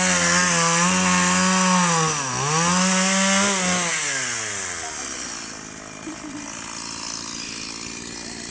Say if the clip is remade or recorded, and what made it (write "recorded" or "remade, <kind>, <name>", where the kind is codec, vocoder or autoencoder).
recorded